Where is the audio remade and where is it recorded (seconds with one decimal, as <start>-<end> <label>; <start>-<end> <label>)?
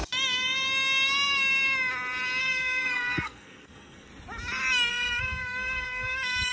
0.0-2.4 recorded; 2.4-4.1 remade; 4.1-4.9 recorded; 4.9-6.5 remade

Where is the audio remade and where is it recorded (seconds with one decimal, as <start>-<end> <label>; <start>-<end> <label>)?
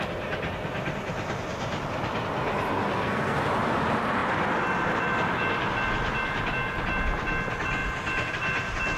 0.0-2.9 recorded; 2.9-3.4 remade; 3.4-9.0 recorded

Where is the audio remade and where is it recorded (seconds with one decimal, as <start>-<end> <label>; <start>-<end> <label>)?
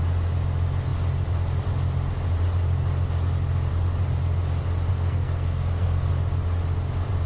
0.0-4.9 recorded; 4.9-6.1 remade; 6.1-7.3 recorded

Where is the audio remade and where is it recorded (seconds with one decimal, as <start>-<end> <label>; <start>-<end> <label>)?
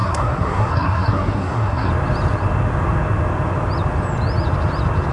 0.0-1.9 remade; 1.9-5.1 recorded